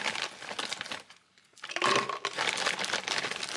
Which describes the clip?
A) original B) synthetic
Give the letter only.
A